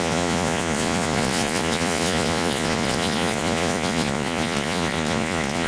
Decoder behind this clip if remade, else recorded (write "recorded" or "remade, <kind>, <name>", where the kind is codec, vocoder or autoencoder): remade, vocoder, Vocos